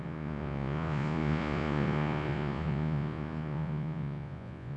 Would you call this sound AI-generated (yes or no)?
yes